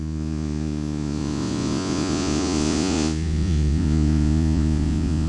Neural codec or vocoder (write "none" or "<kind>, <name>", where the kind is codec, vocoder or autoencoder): vocoder, Vocos